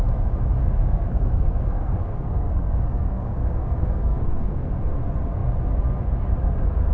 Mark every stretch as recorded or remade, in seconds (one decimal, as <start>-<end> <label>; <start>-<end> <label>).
0.0-0.6 recorded; 0.6-4.7 remade; 4.7-6.9 recorded

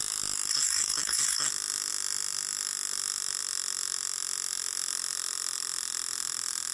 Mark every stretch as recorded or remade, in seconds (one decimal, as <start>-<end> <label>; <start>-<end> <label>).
0.0-0.5 recorded; 0.5-1.5 remade; 1.5-6.7 recorded

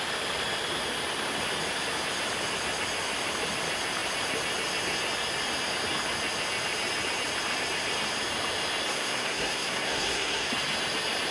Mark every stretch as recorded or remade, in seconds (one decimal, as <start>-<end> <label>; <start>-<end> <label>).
0.0-8.9 recorded; 8.9-10.5 remade; 10.5-11.3 recorded